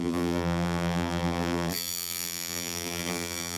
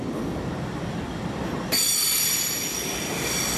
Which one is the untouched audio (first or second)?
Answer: second